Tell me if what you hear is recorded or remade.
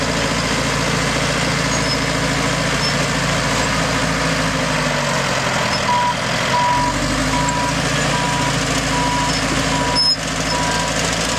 recorded